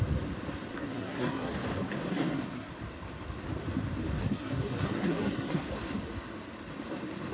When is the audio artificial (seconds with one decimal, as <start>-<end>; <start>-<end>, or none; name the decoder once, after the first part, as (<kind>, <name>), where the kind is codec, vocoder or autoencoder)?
0.7-1.5 (codec, SNAC); 2.1-2.7; 4.2-5.6